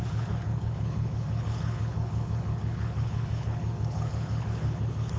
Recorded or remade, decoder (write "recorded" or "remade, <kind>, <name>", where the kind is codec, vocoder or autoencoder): remade, codec, HILCodec